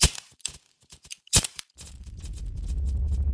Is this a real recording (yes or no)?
no